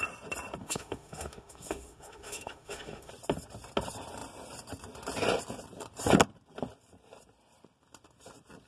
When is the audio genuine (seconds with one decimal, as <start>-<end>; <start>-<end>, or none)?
0.0-0.6; 3.1-8.7